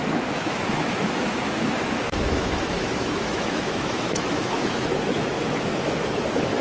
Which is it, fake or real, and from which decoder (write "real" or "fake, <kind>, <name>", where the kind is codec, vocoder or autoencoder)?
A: fake, autoencoder, DAC-VAE